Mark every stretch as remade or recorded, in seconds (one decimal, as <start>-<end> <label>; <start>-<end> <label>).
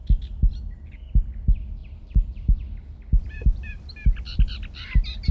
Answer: 0.0-1.8 recorded; 1.8-5.3 remade